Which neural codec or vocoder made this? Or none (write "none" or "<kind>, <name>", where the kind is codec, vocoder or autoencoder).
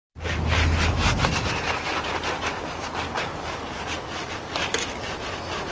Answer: vocoder, BigVGAN v2